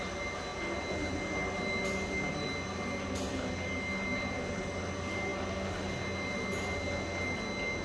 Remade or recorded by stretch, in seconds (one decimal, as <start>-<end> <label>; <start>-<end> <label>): 0.0-7.8 recorded